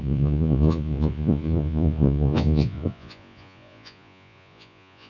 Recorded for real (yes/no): no